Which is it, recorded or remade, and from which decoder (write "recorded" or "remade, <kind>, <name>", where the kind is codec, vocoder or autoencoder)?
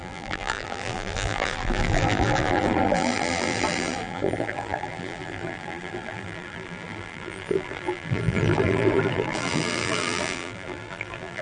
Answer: remade, vocoder, BigVGAN v2